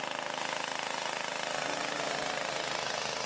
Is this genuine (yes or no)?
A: yes